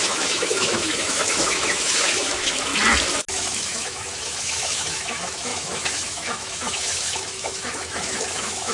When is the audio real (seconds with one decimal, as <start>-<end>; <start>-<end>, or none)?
2.7-3.3

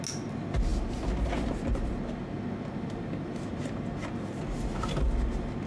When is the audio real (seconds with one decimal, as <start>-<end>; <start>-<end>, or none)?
0.0-5.7